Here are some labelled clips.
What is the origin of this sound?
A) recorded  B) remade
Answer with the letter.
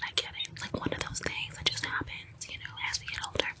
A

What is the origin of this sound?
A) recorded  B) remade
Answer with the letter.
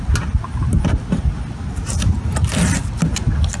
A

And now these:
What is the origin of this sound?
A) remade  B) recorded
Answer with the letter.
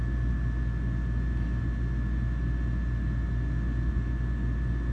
B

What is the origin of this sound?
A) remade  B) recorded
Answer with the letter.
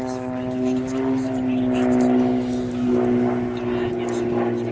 B